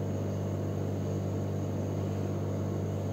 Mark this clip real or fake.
real